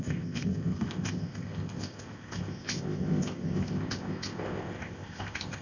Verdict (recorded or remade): remade